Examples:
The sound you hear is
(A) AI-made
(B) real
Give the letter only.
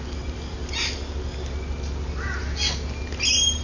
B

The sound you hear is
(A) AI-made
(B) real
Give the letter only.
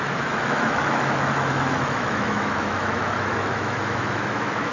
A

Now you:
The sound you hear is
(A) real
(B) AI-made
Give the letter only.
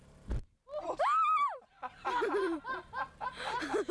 B